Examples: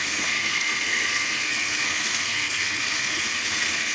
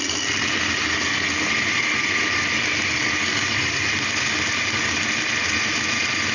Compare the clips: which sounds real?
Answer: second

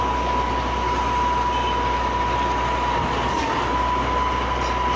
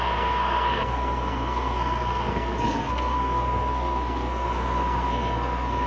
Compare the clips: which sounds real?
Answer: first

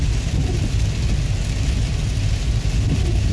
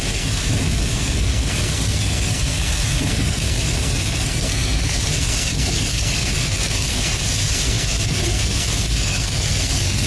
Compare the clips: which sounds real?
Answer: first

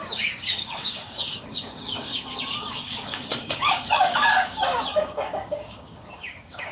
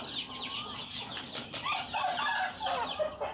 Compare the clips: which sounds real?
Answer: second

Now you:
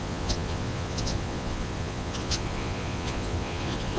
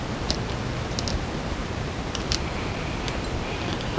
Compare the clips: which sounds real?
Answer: second